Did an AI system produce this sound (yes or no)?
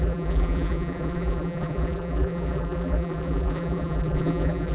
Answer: yes